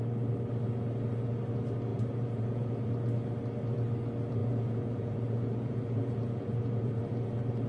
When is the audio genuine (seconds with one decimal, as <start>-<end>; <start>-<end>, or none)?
0.0-1.9; 2.7-4.4; 7.0-7.7